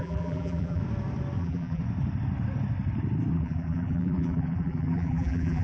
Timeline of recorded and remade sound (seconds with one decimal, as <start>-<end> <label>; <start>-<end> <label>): 0.0-0.8 remade; 0.8-1.4 recorded; 1.4-1.8 remade; 1.8-3.3 recorded; 3.3-5.6 remade